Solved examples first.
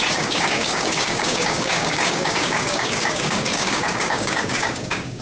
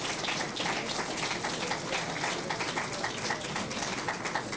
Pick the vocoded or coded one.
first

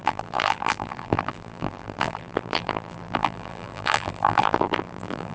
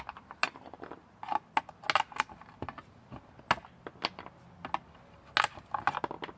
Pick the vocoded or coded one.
first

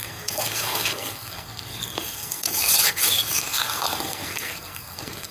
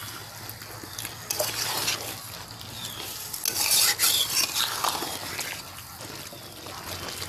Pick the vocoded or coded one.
first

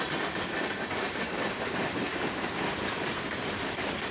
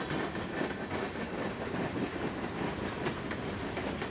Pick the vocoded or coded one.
first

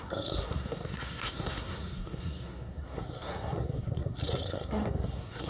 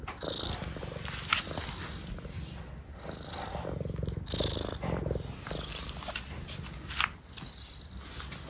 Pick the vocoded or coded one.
first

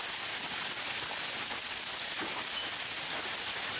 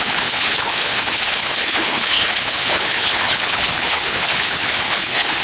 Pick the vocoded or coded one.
second